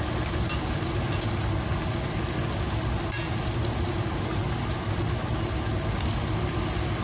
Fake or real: real